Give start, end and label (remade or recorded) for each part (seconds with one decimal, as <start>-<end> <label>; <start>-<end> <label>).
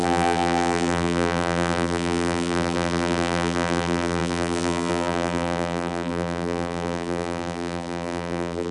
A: 0.0-8.7 remade